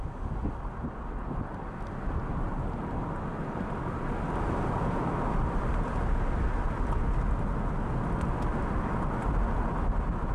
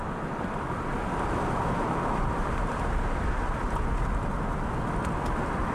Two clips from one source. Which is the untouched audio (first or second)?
first